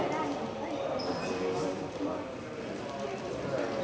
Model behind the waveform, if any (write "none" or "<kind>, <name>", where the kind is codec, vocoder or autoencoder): none